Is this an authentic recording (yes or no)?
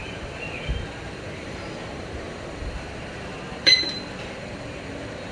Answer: no